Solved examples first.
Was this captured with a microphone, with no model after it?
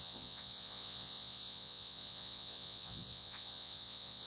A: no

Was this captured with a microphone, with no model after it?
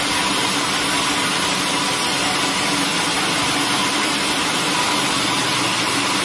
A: yes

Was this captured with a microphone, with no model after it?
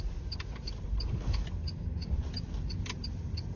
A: yes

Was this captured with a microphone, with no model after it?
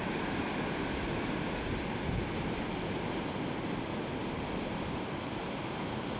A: yes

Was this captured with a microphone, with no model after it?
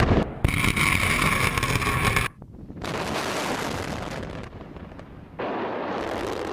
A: yes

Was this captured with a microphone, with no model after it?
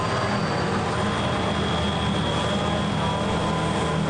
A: yes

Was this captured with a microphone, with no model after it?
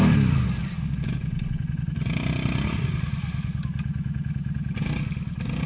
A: yes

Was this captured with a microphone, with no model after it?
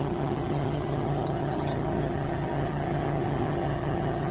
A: no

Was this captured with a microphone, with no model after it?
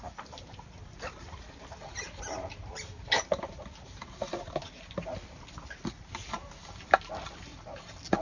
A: yes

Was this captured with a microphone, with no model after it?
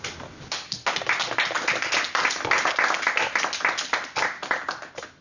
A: yes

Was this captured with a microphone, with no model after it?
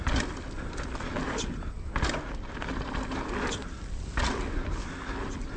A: yes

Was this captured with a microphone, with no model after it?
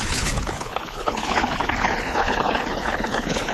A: no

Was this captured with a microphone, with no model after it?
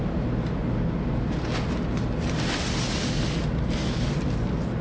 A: yes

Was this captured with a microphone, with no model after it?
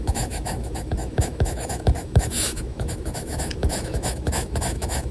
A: no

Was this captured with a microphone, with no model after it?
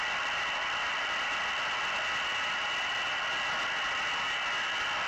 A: yes